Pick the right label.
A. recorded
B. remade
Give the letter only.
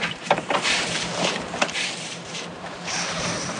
B